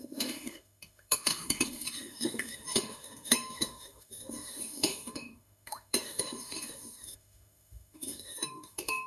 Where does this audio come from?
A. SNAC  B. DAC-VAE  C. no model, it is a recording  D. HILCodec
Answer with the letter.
B